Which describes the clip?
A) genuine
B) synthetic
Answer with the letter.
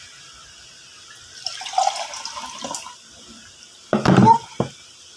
A